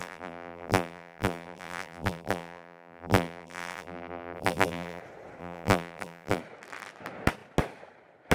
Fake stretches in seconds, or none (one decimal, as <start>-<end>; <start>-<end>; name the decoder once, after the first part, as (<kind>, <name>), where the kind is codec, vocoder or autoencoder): 0.0-5.0 (vocoder, BigVGAN v2); 5.4-6.4